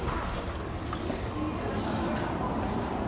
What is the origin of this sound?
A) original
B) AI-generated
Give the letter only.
A